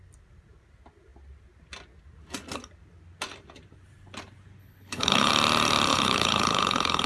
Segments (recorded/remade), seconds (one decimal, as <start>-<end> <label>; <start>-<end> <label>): 0.0-4.6 recorded; 4.6-5.3 remade; 5.3-5.9 recorded; 5.9-7.1 remade